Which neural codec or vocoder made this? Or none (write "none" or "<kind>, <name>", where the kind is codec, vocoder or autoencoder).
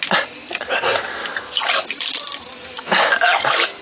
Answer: none